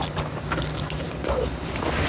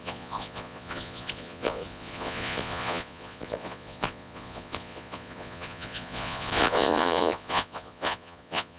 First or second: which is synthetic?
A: second